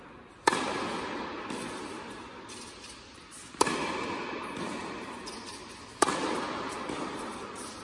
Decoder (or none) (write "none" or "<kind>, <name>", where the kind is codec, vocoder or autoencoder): none